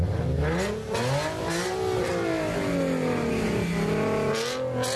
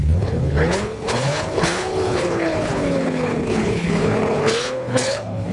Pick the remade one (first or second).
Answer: second